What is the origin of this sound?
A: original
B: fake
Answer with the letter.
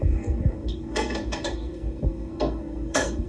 B